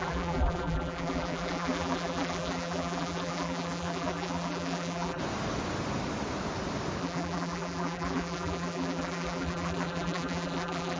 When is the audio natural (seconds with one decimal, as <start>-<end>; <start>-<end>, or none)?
5.2-7.0